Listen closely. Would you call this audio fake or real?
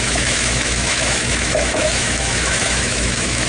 fake